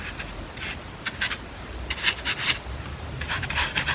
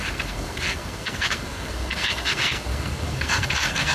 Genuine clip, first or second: first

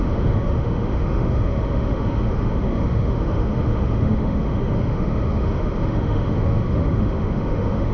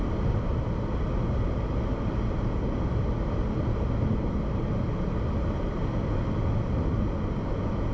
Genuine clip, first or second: second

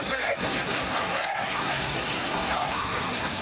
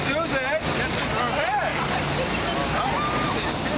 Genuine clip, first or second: second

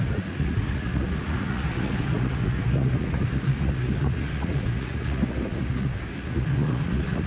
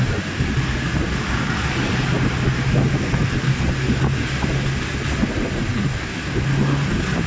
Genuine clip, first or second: second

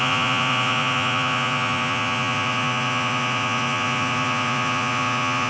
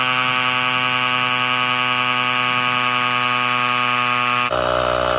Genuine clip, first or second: second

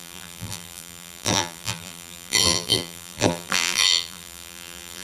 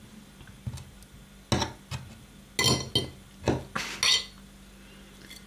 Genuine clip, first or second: second